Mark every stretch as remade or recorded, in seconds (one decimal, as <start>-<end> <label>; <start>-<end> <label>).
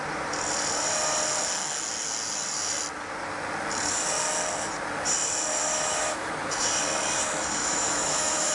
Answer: 0.0-5.6 recorded; 5.6-6.3 remade; 6.3-7.6 recorded; 7.6-8.5 remade